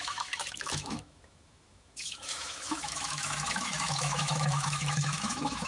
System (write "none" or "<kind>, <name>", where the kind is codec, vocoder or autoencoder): autoencoder, DAC-VAE